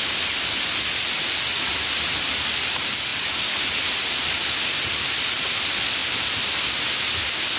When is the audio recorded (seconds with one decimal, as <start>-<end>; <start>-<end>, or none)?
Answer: 0.0-7.6